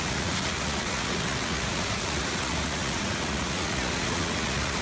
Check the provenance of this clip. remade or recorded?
remade